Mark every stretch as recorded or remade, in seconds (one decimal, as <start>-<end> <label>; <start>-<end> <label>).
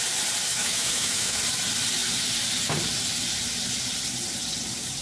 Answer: 0.0-0.5 recorded; 0.5-1.4 remade; 1.4-5.0 recorded